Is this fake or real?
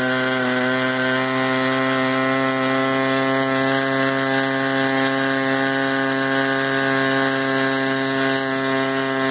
real